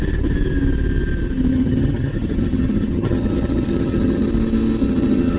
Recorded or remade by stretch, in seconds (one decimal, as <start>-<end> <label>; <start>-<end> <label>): 0.0-1.5 recorded; 1.5-4.3 remade; 4.3-4.8 recorded; 4.8-5.4 remade